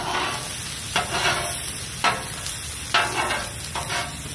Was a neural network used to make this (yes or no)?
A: no